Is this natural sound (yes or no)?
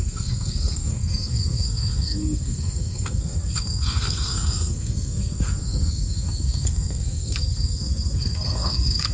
no